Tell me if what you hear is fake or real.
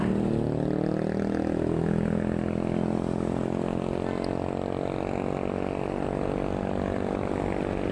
real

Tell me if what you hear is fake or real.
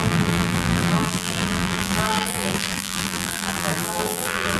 fake